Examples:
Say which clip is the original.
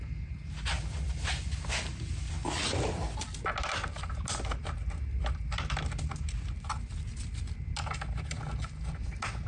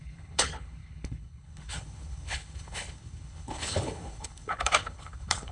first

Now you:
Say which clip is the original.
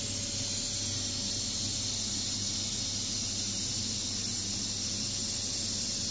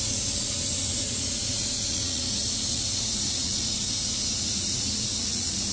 first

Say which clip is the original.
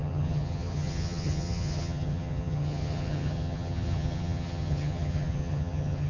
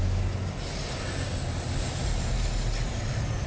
second